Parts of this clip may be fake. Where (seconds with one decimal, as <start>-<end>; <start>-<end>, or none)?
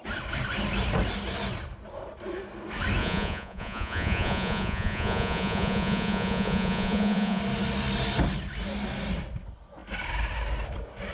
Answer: 3.0-7.4